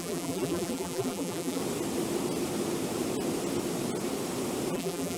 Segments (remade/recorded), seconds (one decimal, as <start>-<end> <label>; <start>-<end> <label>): 0.0-1.6 remade; 1.6-4.7 recorded; 4.7-5.2 remade